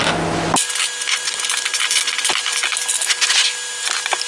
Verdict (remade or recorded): recorded